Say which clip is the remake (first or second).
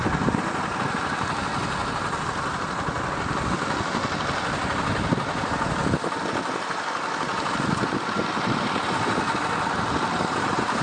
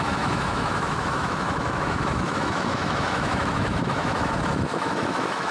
second